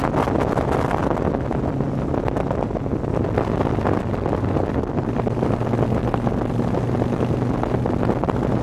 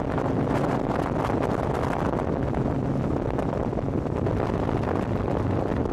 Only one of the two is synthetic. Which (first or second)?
second